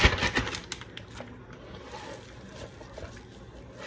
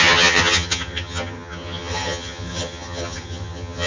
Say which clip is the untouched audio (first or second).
first